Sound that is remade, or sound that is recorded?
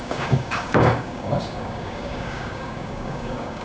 remade